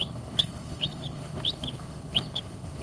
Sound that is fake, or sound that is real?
fake